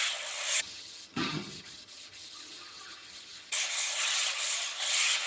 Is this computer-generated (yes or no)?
yes